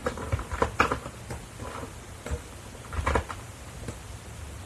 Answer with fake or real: real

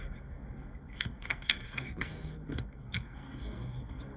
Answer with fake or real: fake